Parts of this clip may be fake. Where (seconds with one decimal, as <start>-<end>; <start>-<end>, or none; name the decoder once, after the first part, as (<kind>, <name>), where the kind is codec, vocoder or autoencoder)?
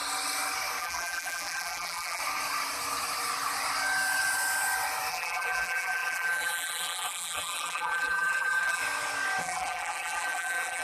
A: 0.8-2.2 (vocoder, BigVGAN v2); 5.1-8.8; 9.4-10.8